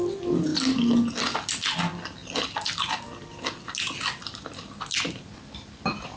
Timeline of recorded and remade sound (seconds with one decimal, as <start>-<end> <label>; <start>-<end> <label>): 0.0-6.2 recorded